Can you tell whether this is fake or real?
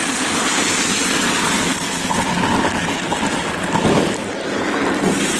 real